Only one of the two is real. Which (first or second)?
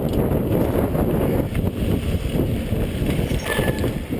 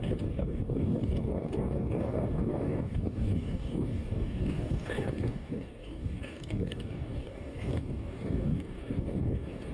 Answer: first